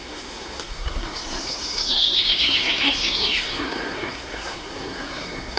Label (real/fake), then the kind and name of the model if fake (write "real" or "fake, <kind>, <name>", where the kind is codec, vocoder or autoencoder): fake, codec, SNAC